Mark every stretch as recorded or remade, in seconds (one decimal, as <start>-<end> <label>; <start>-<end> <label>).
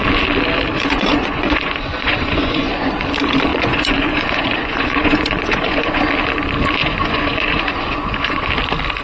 0.0-0.7 recorded; 0.7-2.9 remade; 2.9-3.5 recorded; 3.5-6.0 remade; 6.0-6.8 recorded; 6.8-8.5 remade; 8.5-9.0 recorded